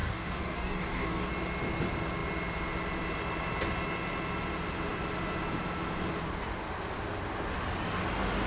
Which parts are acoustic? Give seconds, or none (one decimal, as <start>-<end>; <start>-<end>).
1.3-8.5